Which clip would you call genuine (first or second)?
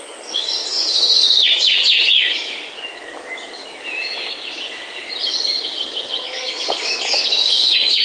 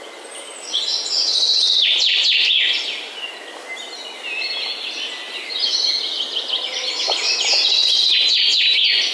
second